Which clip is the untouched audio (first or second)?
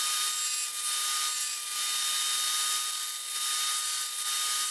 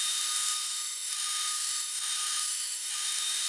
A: first